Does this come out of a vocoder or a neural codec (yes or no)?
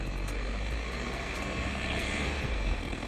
yes